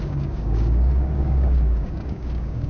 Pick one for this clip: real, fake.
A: fake